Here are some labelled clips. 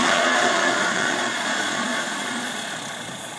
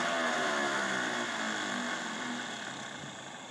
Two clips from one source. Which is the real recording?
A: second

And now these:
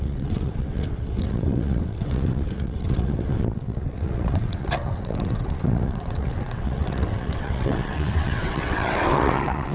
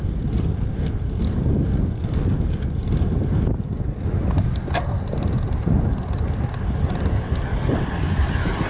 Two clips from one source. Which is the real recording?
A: second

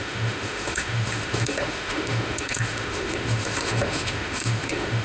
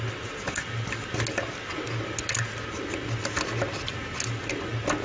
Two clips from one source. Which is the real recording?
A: second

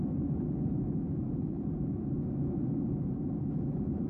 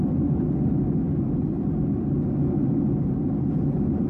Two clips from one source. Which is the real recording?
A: second